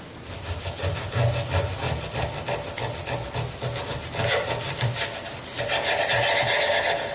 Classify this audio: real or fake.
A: real